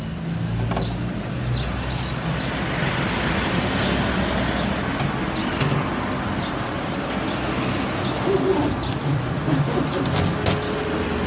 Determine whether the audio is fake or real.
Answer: real